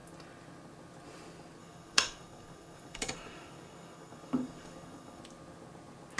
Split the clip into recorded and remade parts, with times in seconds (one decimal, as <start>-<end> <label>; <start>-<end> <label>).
0.0-1.6 recorded; 1.6-5.2 remade; 5.2-6.2 recorded

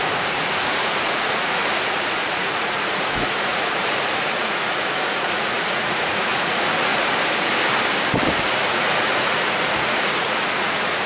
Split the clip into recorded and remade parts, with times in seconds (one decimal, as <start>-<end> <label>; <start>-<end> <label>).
0.0-6.9 remade; 6.9-8.4 recorded; 8.4-11.1 remade

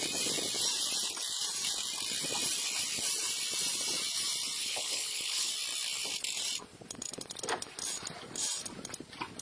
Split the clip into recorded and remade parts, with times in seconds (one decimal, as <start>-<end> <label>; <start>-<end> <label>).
0.0-4.6 recorded; 4.6-5.5 remade; 5.5-9.4 recorded

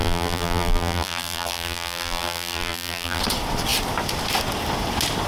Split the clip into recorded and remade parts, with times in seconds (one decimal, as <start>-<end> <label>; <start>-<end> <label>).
0.0-3.2 remade; 3.2-5.3 recorded

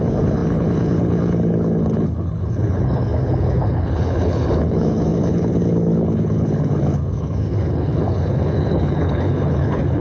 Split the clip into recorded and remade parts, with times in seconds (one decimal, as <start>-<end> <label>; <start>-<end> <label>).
0.0-10.0 remade

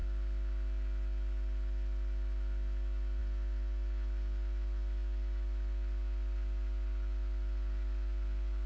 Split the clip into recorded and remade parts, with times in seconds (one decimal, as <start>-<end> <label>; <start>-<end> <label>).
0.0-8.7 recorded